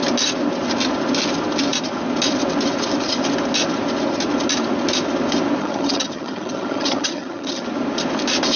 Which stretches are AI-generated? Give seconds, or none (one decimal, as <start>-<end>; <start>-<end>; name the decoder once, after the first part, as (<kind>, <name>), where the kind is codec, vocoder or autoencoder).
5.6-7.6 (vocoder, HiFi-GAN)